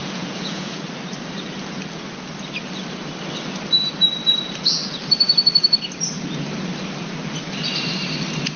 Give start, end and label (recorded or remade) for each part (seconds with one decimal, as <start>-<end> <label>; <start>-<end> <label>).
0.0-0.8 remade; 0.8-8.6 recorded